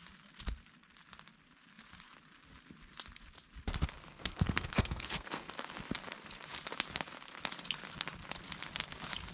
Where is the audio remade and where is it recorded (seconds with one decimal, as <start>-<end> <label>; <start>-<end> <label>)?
0.0-4.1 recorded; 4.1-5.5 remade; 5.5-9.3 recorded